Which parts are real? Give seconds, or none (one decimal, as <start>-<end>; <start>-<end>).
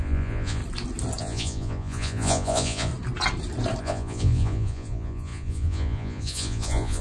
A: 0.6-1.2; 2.9-3.8